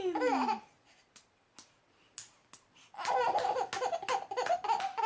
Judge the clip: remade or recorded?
recorded